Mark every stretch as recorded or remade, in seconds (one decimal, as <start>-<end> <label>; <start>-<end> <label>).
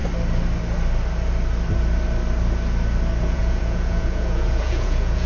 0.0-3.2 recorded; 3.2-5.3 remade